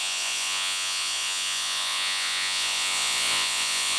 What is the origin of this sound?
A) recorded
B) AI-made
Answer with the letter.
B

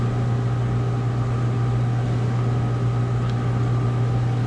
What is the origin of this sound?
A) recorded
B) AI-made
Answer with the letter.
A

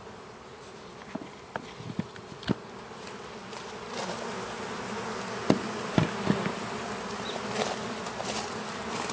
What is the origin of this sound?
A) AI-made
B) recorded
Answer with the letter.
B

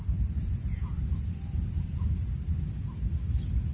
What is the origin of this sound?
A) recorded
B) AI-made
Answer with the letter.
A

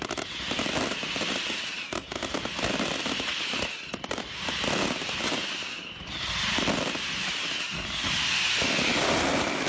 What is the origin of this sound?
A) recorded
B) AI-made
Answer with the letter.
A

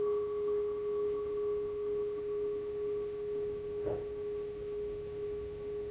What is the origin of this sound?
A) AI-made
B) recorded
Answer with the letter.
A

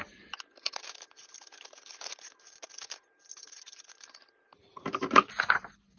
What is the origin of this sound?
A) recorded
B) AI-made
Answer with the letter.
B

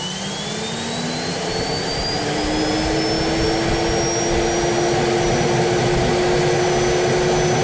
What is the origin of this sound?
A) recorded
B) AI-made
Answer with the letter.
A